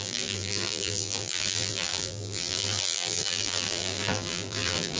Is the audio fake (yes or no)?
yes